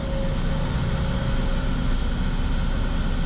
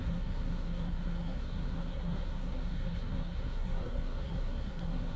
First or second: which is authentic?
first